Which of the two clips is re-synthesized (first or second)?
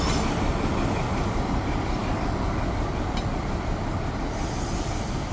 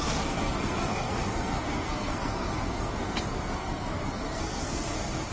second